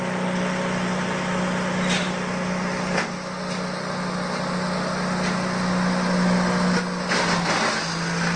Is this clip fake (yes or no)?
no